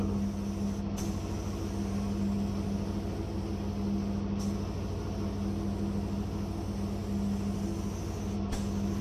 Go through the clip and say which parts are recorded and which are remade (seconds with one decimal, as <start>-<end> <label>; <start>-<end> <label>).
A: 0.0-9.0 recorded